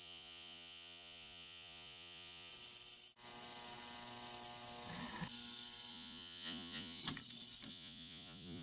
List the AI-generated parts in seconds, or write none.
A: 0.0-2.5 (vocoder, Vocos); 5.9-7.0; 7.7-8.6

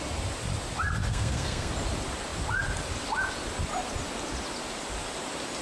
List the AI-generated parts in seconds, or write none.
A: 1.1-1.7 (codec, SNAC)

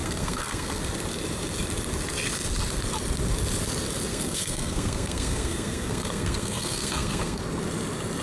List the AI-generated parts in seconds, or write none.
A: 0.0-0.8 (codec, SNAC); 4.1-7.4

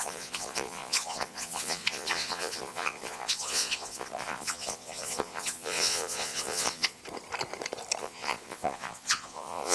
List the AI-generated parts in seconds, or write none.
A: 0.0-7.0 (vocoder, Vocos); 8.0-9.7

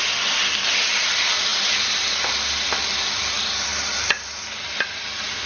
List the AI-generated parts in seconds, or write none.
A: none